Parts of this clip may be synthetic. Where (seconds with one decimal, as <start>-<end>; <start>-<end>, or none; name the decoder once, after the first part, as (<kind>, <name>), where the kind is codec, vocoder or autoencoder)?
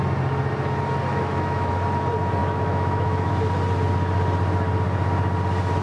1.1-1.7 (autoencoder, DAC-VAE); 2.4-3.3